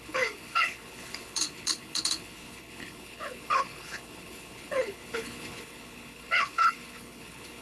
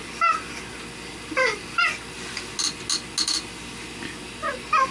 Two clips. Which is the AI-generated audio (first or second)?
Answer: first